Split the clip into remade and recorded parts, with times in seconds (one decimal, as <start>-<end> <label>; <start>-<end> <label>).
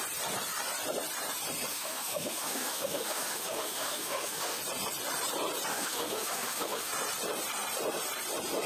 0.0-1.7 recorded; 1.7-4.6 remade; 4.6-5.7 recorded; 5.7-6.9 remade; 6.9-8.7 recorded